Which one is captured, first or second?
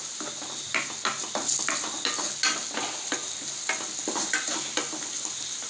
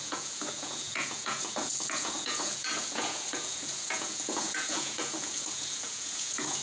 first